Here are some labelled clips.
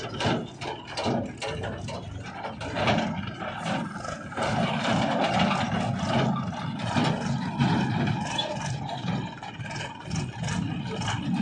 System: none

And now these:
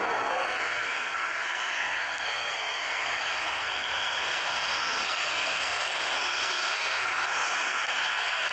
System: codec, SNAC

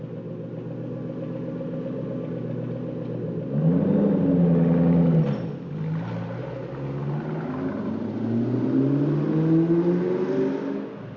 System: none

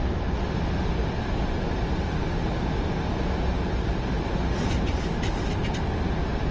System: none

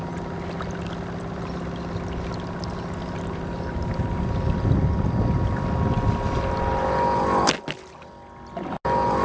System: none